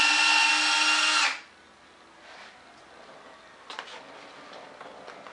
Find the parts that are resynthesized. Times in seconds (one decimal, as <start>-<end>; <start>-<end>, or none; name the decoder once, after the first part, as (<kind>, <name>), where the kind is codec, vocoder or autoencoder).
none